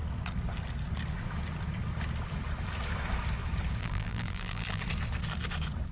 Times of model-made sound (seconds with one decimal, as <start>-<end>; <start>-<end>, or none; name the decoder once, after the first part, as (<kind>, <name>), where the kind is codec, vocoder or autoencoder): 3.8-4.8 (vocoder, BigVGAN v2)